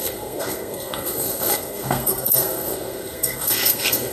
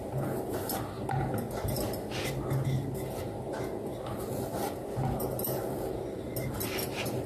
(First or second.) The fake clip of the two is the first